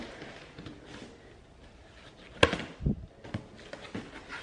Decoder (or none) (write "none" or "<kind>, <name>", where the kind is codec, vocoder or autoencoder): none